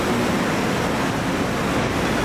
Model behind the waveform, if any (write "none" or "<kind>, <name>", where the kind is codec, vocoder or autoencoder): none